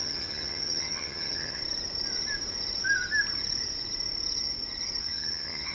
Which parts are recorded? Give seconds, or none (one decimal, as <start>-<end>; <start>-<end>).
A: 1.6-5.0

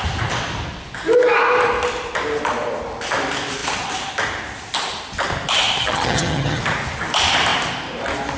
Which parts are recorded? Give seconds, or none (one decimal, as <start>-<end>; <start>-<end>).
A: 0.0-5.8; 6.6-8.4

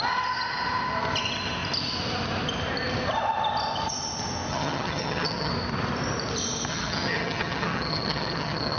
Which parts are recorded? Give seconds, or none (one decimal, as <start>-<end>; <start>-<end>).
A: 0.0-4.5; 5.5-6.7

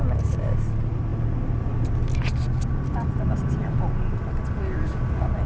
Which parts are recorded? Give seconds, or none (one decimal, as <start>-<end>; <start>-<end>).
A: 0.0-5.5

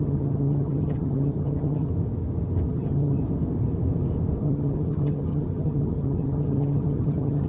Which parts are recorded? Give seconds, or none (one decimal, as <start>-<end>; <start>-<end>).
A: 1.9-2.7; 3.2-4.4

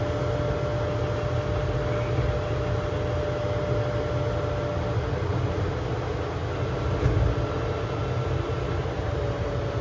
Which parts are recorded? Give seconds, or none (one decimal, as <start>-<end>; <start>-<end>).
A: 0.0-9.8

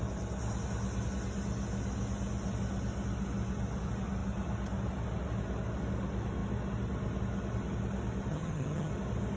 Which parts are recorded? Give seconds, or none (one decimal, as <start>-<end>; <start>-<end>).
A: 0.0-8.3; 8.9-9.4

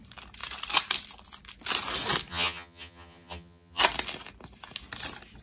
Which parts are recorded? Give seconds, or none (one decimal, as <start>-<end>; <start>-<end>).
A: 0.0-2.3; 3.8-5.4